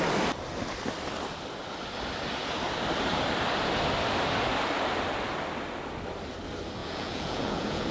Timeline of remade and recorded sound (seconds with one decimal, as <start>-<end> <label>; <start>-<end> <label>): 0.0-6.8 recorded; 6.8-7.9 remade